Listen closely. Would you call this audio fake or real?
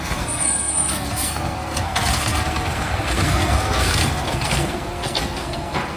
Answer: fake